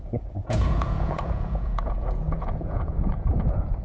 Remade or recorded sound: remade